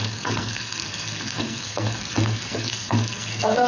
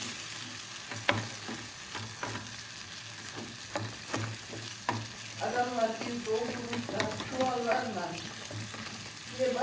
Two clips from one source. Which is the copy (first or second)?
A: first